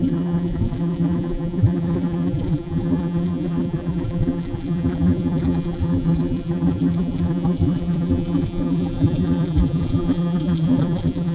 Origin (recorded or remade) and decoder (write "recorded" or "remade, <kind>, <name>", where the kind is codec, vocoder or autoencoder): remade, vocoder, BigVGAN v2